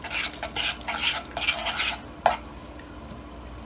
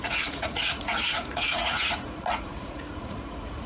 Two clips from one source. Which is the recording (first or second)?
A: first